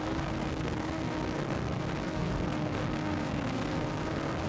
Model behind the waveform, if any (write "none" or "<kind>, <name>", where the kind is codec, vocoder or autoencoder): codec, SNAC